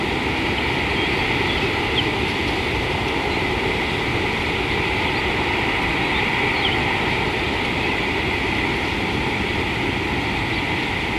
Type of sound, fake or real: real